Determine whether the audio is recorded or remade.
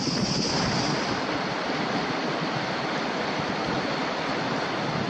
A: recorded